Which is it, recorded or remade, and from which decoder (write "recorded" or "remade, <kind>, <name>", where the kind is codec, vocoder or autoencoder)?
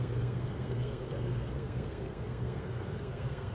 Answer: remade, codec, SNAC